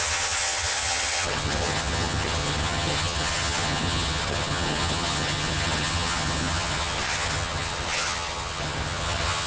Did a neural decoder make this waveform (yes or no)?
yes